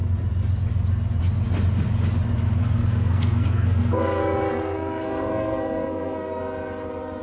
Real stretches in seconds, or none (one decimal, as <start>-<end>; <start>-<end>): 0.0-2.6; 6.4-7.2